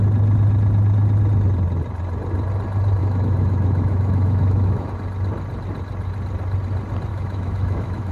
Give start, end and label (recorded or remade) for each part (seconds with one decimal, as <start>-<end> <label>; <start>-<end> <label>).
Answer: 0.0-3.0 recorded; 3.0-4.9 remade; 4.9-7.1 recorded; 7.1-8.1 remade